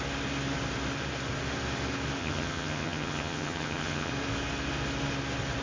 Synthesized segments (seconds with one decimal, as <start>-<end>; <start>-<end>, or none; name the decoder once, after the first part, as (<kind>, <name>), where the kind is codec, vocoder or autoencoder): 2.2-4.1 (vocoder, HiFi-GAN)